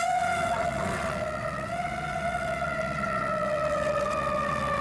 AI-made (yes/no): yes